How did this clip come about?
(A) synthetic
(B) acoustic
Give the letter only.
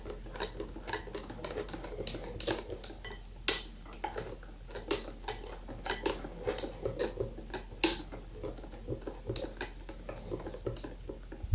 B